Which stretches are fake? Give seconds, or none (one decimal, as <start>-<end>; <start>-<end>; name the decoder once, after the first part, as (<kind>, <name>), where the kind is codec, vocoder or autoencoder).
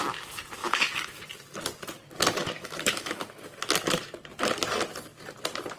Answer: 0.6-1.2 (autoencoder, DAC-VAE); 2.4-3.4